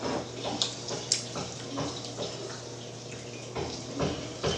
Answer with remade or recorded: recorded